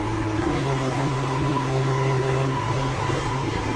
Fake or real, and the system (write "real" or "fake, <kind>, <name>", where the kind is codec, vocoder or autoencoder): fake, codec, SNAC